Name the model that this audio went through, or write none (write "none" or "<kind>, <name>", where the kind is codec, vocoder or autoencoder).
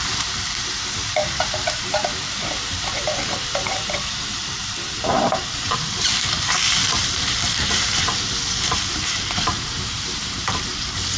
vocoder, BigVGAN v2